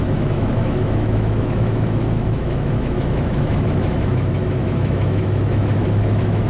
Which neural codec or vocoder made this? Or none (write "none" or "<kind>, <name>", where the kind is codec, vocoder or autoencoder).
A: autoencoder, DAC-VAE